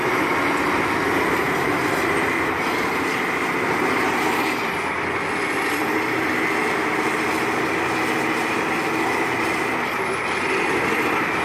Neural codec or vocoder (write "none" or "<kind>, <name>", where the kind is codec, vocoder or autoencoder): none